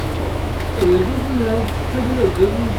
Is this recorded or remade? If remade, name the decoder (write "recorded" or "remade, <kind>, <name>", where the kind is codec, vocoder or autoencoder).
remade, autoencoder, DAC-VAE